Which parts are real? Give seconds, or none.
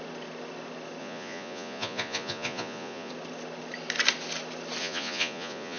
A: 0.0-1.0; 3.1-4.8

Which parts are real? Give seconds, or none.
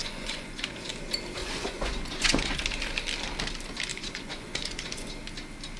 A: 0.9-1.4; 2.6-3.9; 5.1-5.8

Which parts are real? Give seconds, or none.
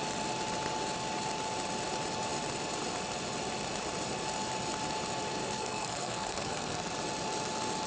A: 0.0-5.4; 6.9-7.9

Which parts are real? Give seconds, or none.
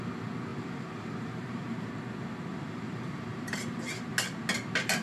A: 0.0-0.5; 1.9-2.5; 4.1-5.0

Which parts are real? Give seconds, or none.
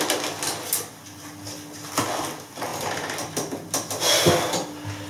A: 0.0-2.7; 4.3-5.1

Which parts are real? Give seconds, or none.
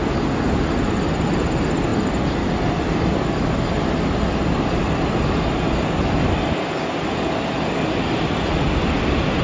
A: 0.0-9.4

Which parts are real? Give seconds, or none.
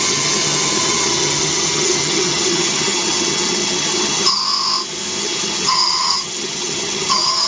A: 4.4-5.2